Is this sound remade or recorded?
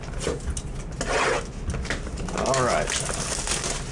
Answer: recorded